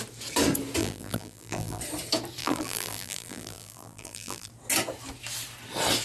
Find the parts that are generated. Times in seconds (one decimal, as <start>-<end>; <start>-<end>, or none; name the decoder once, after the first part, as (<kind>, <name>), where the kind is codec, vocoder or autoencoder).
0.8-1.8 (vocoder, BigVGAN v2); 2.4-4.5